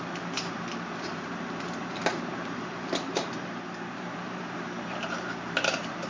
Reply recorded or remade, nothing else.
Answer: remade